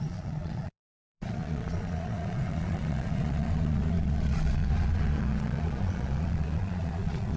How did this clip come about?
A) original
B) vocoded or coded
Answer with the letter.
B